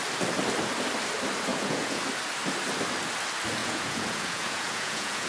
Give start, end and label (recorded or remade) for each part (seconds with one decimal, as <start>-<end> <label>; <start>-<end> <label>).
0.0-1.5 recorded; 1.5-2.0 remade; 2.0-3.6 recorded; 3.6-5.3 remade